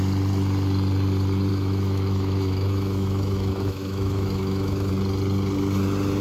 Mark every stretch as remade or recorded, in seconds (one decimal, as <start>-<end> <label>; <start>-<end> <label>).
0.0-1.5 recorded; 1.5-4.9 remade; 4.9-6.2 recorded